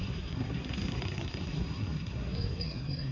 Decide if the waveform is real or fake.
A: fake